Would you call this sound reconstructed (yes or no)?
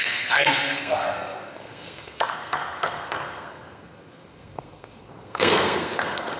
yes